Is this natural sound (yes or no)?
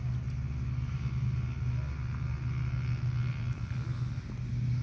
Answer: yes